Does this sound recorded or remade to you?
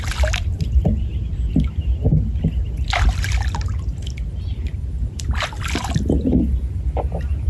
recorded